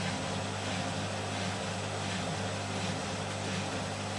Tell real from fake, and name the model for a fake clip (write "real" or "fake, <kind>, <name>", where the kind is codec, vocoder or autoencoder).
real